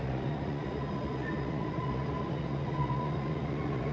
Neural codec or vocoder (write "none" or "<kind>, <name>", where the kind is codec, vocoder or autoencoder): vocoder, Vocos